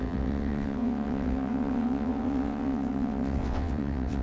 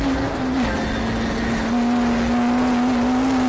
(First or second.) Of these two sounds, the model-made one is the first